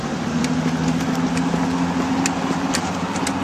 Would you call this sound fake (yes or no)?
no